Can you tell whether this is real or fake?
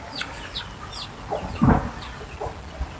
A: real